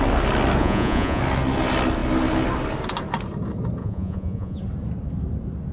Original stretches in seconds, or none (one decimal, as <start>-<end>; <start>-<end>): 0.0-0.6; 1.2-3.8; 4.6-5.7